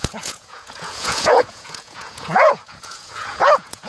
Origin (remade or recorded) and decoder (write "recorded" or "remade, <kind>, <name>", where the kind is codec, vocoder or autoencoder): remade, vocoder, Vocos